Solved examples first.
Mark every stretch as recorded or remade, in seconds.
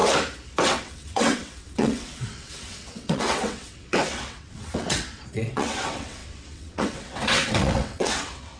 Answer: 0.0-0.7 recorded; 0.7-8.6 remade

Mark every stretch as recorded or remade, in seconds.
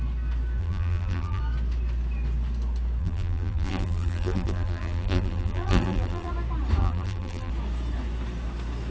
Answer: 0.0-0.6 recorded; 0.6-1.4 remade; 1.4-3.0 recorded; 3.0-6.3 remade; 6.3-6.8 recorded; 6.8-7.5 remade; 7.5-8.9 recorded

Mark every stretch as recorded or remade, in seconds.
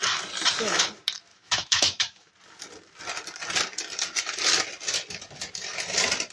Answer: 0.0-1.3 recorded; 1.3-2.3 remade; 2.3-6.3 recorded